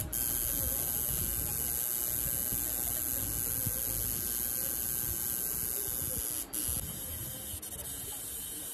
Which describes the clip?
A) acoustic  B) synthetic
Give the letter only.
A